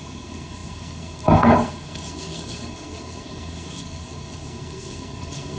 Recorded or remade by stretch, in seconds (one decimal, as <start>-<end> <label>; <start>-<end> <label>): 0.0-5.6 remade

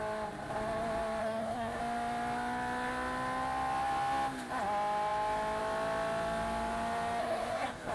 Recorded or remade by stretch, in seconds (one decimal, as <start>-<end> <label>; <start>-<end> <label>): 0.0-1.2 recorded; 1.2-1.8 remade; 1.8-7.2 recorded; 7.2-7.9 remade

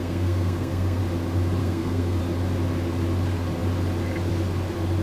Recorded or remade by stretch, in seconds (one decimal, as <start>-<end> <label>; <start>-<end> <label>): 0.0-1.0 remade; 1.0-1.6 recorded; 1.6-2.2 remade; 2.2-5.0 recorded

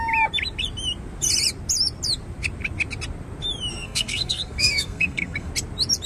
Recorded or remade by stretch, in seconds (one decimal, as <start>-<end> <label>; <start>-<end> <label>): 0.0-3.7 recorded; 3.7-5.5 remade; 5.5-6.1 recorded

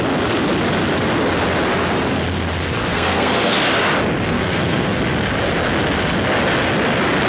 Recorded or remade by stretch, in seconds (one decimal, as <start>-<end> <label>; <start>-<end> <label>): 0.0-2.9 recorded; 2.9-3.6 remade; 3.6-4.3 recorded; 4.3-5.0 remade; 5.0-7.3 recorded

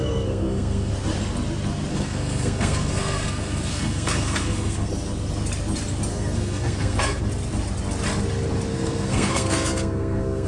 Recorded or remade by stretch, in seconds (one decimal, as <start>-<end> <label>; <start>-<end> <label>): 0.0-0.9 remade; 0.9-1.9 recorded; 1.9-4.9 remade; 4.9-6.1 recorded; 6.1-7.2 remade; 7.2-8.7 recorded; 8.7-10.5 remade

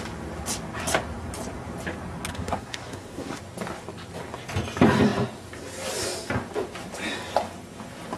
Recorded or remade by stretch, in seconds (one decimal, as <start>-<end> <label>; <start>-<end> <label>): 0.0-2.3 recorded; 2.3-3.4 remade; 3.4-8.2 recorded